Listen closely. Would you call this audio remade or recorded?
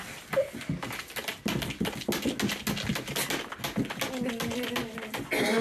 recorded